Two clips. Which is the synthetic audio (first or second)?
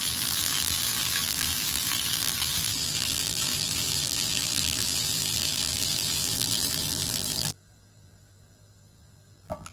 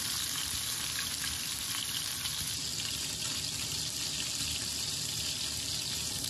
first